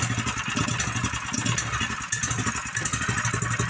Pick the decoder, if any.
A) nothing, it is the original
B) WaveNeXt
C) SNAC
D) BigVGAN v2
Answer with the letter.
A